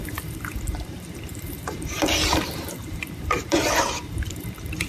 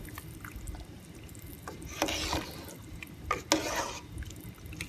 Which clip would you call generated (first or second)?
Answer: first